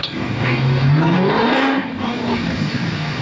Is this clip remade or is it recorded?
remade